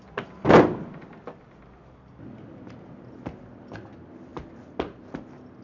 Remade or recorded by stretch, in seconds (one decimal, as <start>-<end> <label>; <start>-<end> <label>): 0.0-5.6 recorded